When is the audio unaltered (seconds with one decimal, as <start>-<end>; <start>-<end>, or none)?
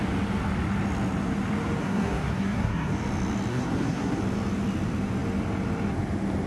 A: 0.0-1.8; 2.9-3.5; 4.2-6.5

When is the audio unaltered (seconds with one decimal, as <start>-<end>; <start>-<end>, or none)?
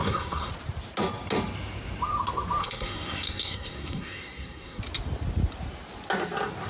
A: 0.5-2.6; 4.8-6.7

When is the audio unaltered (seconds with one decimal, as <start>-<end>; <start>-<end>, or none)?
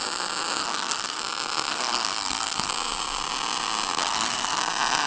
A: 0.0-0.6; 1.2-1.7; 2.7-4.0; 4.6-5.1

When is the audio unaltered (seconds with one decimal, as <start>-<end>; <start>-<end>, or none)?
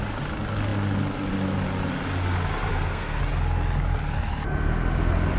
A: 0.0-2.7; 3.2-5.4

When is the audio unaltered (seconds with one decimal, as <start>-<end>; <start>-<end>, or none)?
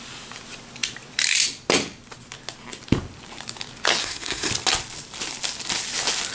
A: 0.0-4.0; 4.5-6.3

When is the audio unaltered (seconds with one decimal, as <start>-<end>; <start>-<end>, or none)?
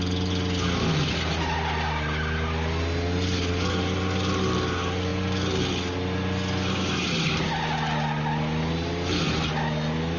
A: 0.0-10.2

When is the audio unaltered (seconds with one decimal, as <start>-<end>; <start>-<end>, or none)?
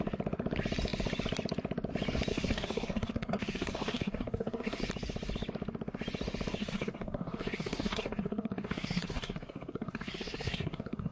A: 0.0-2.3; 4.8-6.6